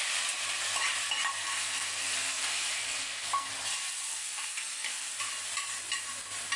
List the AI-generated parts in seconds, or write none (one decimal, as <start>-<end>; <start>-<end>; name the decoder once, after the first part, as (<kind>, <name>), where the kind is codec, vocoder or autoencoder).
1.4-3.5 (codec, SNAC); 4.1-5.1